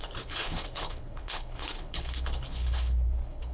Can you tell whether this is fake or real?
fake